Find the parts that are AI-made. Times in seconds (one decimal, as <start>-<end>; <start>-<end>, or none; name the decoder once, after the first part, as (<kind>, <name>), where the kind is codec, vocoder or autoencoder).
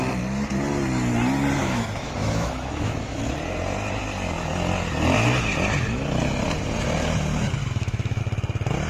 1.6-3.2 (autoencoder, DAC-VAE); 7.6-8.2